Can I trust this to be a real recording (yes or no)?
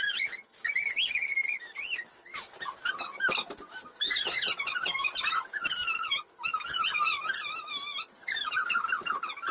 yes